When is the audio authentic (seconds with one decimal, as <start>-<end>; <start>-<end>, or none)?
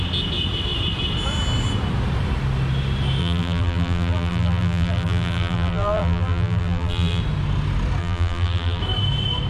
0.0-3.2; 7.2-8.0; 8.8-9.5